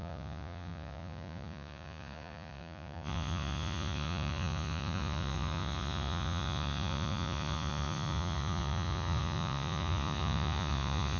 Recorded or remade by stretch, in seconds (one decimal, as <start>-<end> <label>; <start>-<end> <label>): 0.0-11.2 remade